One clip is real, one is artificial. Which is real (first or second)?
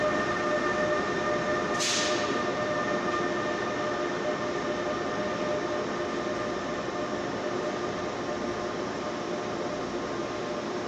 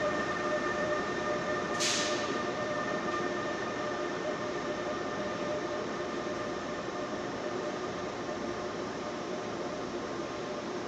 first